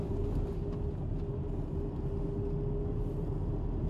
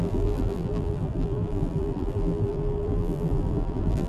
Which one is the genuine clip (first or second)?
first